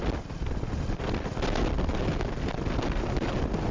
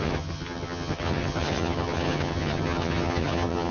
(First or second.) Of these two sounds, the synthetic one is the second